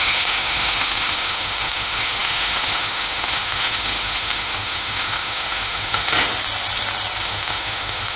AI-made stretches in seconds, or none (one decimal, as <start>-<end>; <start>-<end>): 0.0-6.3; 7.2-8.2